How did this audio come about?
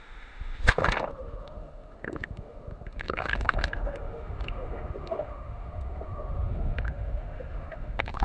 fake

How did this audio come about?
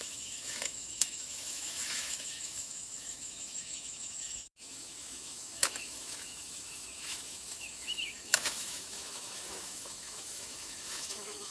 fake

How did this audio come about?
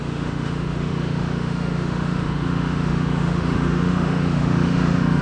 fake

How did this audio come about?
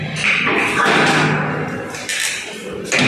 real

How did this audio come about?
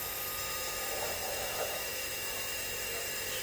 fake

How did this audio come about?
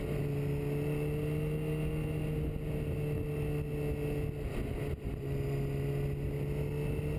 real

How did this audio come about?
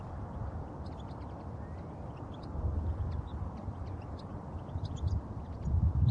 real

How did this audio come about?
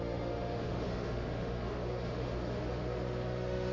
fake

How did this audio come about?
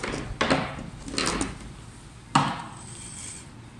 real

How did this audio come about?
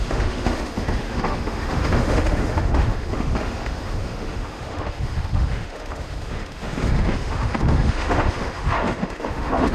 fake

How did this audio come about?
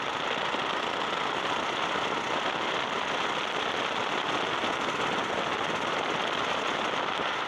real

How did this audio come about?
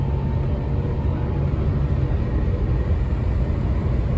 real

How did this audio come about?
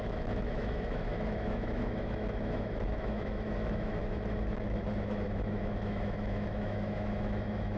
fake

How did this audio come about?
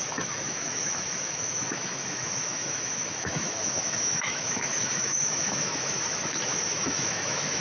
fake